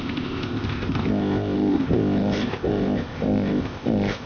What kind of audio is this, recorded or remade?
remade